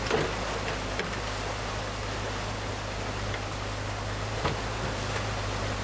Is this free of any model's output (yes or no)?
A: yes